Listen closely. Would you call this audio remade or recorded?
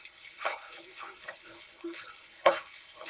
remade